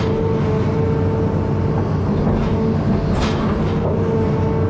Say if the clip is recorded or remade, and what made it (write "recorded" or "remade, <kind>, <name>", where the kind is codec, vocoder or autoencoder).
recorded